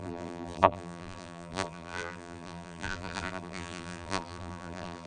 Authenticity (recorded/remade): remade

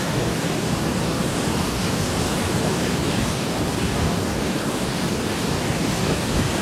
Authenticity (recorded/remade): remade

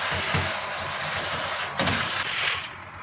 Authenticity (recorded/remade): recorded